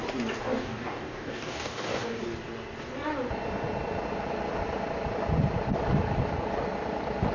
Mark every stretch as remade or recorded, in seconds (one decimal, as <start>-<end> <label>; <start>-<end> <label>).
0.0-0.4 recorded; 0.4-2.2 remade; 2.2-7.3 recorded